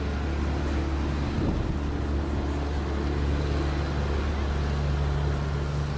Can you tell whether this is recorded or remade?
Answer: recorded